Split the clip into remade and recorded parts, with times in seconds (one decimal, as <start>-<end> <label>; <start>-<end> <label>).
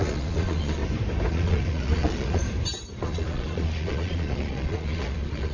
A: 0.0-0.8 remade; 0.8-1.3 recorded; 1.3-2.4 remade; 2.4-3.0 recorded; 3.0-5.5 remade